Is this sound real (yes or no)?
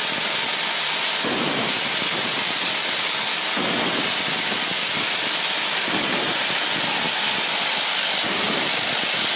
yes